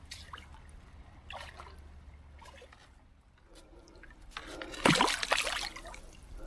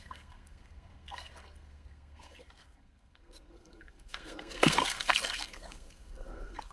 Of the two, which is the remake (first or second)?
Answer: second